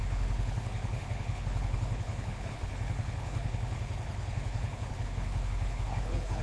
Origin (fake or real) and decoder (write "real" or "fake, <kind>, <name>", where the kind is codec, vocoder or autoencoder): fake, codec, HILCodec